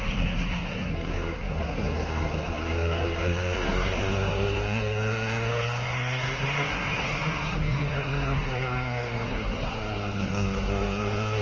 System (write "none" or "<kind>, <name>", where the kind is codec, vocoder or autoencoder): codec, SNAC